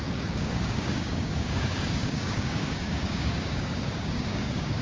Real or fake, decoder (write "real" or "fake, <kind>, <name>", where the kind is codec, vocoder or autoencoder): fake, codec, DAC